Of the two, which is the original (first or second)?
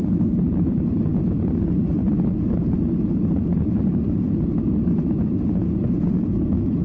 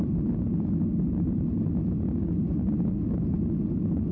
second